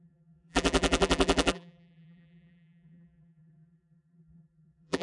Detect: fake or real fake